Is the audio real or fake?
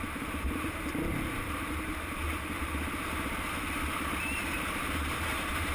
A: fake